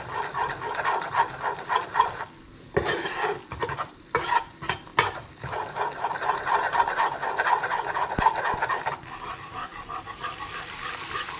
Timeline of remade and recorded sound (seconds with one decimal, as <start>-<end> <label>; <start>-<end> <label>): 0.0-11.4 recorded